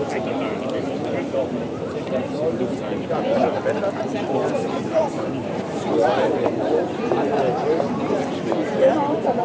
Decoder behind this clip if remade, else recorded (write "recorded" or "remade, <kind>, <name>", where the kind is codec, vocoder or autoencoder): remade, vocoder, BigVGAN v2